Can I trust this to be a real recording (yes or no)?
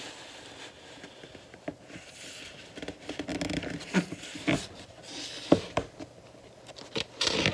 yes